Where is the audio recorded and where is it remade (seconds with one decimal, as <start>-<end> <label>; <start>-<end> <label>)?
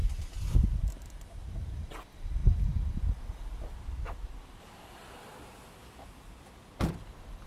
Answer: 0.0-7.5 recorded